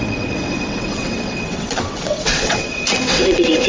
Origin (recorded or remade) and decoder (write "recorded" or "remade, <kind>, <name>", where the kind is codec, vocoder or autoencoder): remade, vocoder, WaveNeXt